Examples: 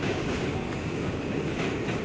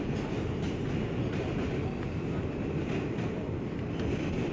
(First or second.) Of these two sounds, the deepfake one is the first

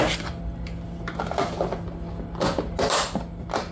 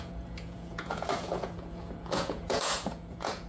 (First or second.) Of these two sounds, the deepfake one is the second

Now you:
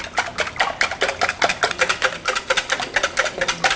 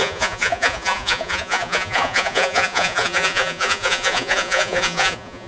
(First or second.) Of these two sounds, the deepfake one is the second